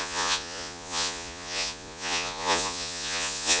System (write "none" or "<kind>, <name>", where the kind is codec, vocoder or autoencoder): vocoder, Vocos